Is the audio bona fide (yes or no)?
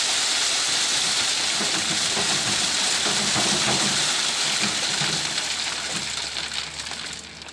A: yes